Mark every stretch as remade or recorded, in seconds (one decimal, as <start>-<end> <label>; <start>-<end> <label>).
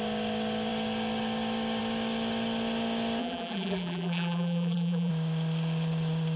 0.0-3.2 recorded; 3.2-5.1 remade; 5.1-6.4 recorded